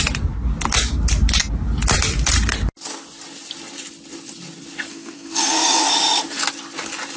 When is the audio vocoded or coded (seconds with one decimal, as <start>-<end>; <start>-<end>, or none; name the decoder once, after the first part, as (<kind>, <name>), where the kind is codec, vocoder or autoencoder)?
4.9-5.9 (codec, SNAC)